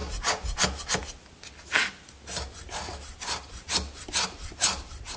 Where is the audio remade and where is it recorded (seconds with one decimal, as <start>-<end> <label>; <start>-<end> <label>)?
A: 0.0-5.2 recorded